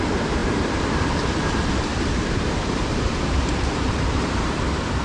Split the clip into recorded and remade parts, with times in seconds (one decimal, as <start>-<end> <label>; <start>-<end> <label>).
0.0-0.4 recorded; 0.4-1.0 remade; 1.0-1.9 recorded; 1.9-5.0 remade